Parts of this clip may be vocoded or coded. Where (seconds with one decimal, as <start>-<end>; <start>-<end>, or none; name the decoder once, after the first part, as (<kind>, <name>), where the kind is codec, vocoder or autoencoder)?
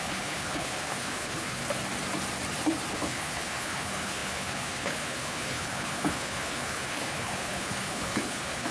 0.0-1.6 (codec, HILCodec); 2.9-8.7